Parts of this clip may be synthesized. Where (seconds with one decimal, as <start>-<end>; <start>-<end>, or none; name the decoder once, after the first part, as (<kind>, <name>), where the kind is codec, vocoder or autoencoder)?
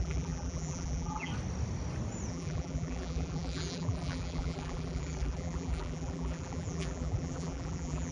0.0-1.3 (vocoder, BigVGAN v2); 2.3-8.1